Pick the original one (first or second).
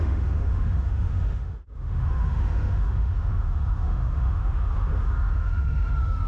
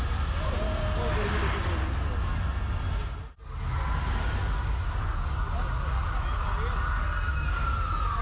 second